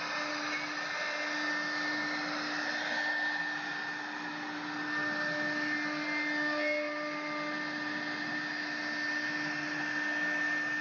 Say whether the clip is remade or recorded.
recorded